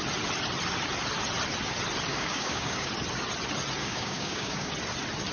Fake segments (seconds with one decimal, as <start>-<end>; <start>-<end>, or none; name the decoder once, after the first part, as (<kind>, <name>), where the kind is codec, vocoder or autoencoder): 2.1-2.9 (codec, DAC); 3.8-4.7

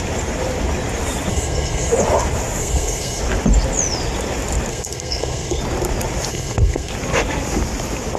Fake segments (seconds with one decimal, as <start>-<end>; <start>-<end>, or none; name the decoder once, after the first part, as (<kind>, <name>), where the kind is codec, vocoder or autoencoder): 1.3-1.9 (codec, SNAC); 2.6-3.2; 4.7-5.6; 6.3-6.9

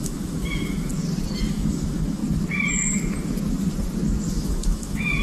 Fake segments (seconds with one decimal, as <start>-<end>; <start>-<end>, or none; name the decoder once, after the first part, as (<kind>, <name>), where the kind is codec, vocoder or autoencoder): 0.0-0.9 (autoencoder, DAC-VAE); 1.5-2.2; 4.3-5.2